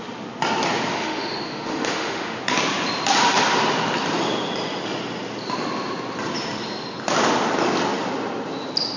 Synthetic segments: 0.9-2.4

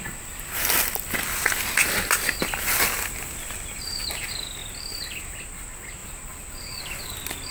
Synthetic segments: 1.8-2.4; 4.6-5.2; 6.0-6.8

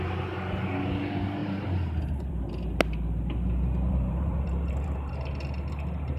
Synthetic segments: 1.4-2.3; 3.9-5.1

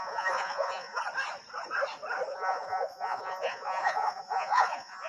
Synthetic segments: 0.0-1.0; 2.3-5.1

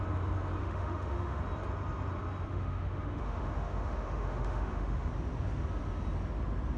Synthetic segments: 0.6-1.4; 2.5-5.1